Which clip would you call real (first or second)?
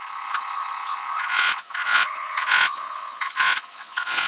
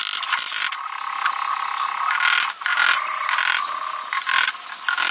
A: second